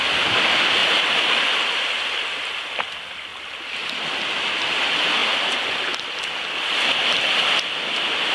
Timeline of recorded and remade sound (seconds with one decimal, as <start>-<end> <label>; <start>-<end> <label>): 0.0-0.8 recorded; 0.8-1.4 remade; 1.4-5.2 recorded; 5.2-8.3 remade